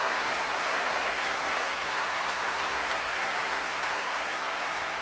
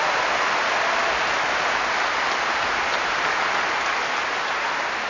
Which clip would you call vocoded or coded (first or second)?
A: first